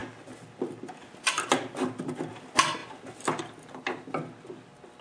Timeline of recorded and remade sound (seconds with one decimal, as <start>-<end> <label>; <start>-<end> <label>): 0.0-5.0 recorded